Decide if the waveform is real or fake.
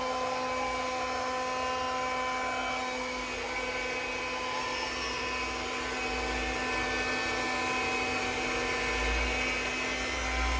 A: real